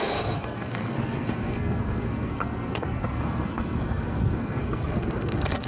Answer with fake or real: fake